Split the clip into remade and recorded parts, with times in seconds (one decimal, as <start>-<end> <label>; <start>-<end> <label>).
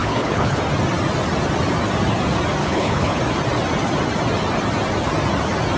0.0-0.6 remade; 0.6-2.6 recorded; 2.6-3.2 remade; 3.2-5.8 recorded